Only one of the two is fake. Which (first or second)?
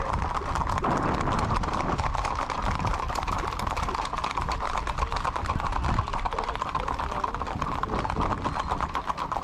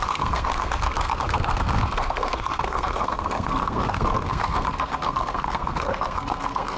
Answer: second